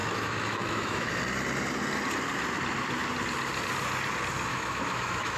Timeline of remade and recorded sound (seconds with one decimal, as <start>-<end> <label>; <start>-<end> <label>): 0.0-1.2 remade; 1.2-4.5 recorded; 4.5-5.4 remade